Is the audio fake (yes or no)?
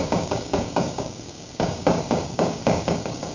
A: yes